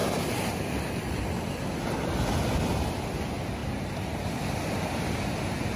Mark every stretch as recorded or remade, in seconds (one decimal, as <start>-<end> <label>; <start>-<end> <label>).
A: 0.0-0.5 remade; 0.5-3.6 recorded; 3.6-4.6 remade; 4.6-5.8 recorded